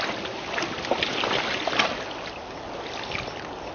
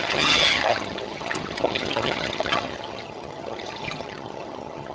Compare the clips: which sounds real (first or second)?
first